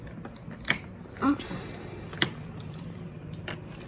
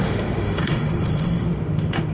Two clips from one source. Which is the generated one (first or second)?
second